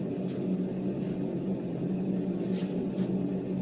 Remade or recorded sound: recorded